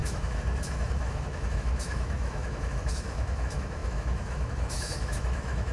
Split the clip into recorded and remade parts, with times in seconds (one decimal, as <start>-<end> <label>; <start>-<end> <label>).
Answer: 0.0-5.7 remade